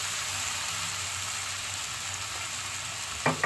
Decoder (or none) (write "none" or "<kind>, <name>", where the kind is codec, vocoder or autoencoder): none